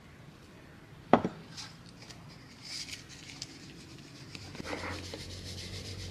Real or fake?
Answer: real